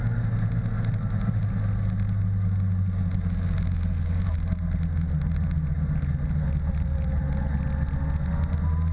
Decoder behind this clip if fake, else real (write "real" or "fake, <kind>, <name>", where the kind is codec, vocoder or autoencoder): real